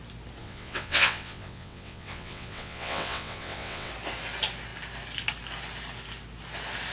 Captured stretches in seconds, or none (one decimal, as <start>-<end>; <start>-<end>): 0.0-0.4; 3.9-6.9